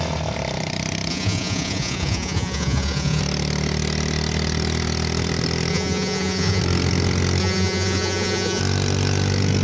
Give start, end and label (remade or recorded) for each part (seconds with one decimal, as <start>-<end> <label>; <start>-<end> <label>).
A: 0.0-1.1 recorded; 1.1-3.2 remade; 3.2-5.7 recorded; 5.7-6.6 remade; 6.6-7.4 recorded; 7.4-8.6 remade; 8.6-9.6 recorded